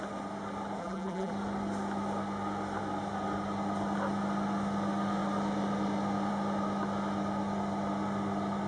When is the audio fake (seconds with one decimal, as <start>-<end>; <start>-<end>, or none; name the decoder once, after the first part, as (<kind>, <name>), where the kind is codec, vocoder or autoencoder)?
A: 0.8-1.3 (vocoder, BigVGAN v2)